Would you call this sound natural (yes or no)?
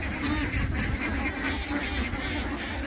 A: yes